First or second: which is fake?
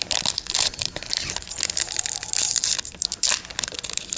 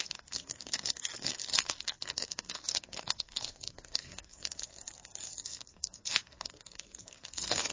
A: second